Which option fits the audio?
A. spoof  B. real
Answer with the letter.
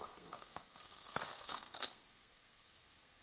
A